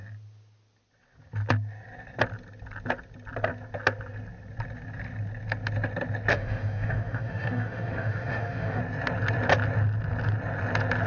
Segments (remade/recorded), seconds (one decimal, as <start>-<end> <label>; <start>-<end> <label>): 0.0-6.3 recorded; 6.3-8.8 remade; 8.8-11.1 recorded